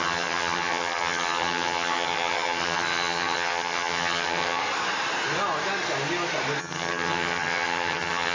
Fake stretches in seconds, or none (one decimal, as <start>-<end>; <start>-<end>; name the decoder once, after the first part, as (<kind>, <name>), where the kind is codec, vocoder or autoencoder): 0.0-4.6 (vocoder, HiFi-GAN); 6.6-8.3